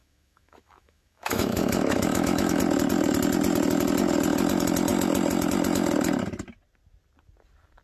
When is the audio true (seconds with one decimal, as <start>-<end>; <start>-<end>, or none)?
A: 2.6-7.8